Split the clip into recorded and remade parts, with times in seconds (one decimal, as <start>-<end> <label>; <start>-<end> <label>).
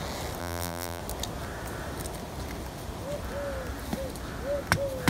0.0-0.4 recorded; 0.4-1.0 remade; 1.0-5.1 recorded